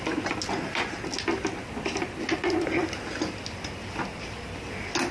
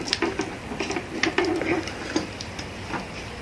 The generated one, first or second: second